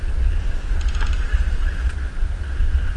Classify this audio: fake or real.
real